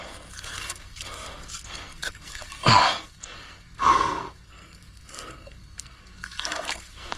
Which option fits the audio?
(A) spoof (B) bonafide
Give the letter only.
A